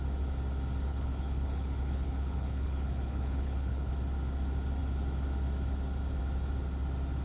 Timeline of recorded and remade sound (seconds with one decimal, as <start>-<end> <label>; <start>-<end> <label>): 0.0-0.9 recorded; 0.9-3.9 remade; 3.9-7.2 recorded